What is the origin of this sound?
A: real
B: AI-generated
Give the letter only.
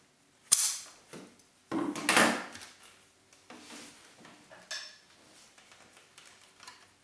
A